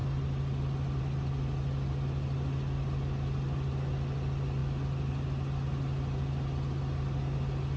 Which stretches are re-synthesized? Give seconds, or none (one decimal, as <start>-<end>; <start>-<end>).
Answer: none